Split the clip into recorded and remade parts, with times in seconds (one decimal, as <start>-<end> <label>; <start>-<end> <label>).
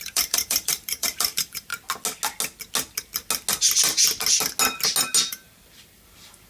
0.0-1.7 remade; 1.7-5.3 recorded; 5.3-6.5 remade